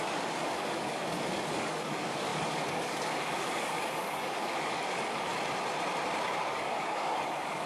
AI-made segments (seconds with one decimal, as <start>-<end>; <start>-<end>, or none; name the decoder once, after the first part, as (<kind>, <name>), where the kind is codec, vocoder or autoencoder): 0.0-5.3 (codec, DAC); 6.5-7.7